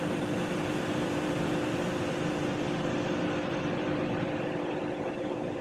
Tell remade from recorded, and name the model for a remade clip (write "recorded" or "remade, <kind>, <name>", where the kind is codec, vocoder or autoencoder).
remade, vocoder, BigVGAN v2